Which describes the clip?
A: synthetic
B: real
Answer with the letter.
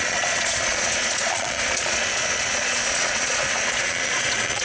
A